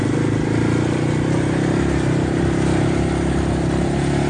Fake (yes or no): no